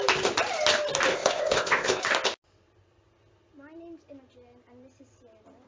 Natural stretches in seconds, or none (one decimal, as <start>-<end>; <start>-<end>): 0.0-1.1; 2.0-5.7